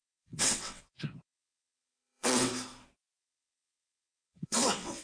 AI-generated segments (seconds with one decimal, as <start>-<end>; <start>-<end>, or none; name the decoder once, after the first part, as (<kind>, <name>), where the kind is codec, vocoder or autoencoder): 0.0-2.5 (vocoder, WaveNeXt); 3.2-5.0